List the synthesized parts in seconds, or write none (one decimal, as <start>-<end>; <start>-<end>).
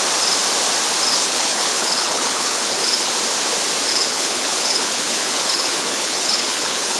1.1-3.1; 3.9-7.0